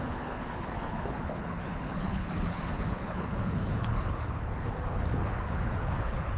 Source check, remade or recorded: remade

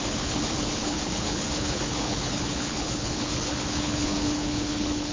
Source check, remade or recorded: remade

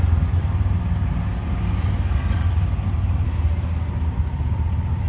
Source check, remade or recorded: recorded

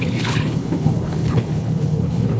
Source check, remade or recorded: remade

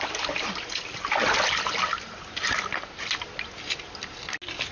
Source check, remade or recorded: recorded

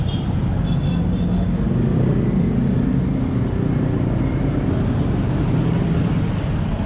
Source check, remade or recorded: recorded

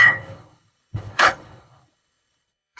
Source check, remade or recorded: remade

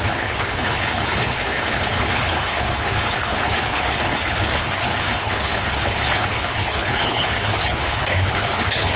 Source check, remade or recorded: remade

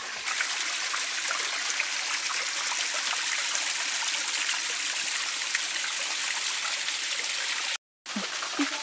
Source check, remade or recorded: recorded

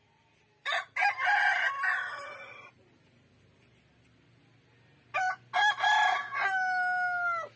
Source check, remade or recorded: recorded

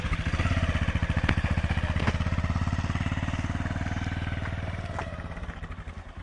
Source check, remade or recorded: recorded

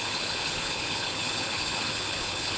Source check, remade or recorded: remade